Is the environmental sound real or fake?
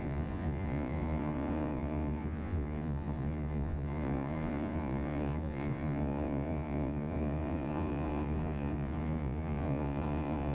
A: fake